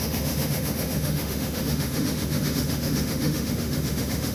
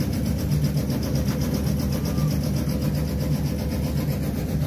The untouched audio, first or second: second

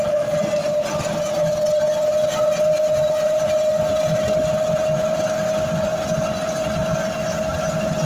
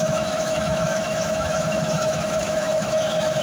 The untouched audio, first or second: first